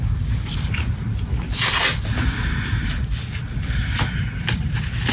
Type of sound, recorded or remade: recorded